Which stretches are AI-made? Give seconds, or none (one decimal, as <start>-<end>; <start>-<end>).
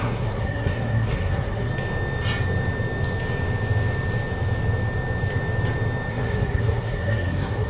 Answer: 0.0-1.7; 6.1-7.7